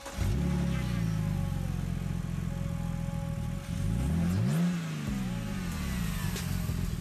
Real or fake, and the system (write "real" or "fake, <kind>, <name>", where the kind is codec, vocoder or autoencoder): real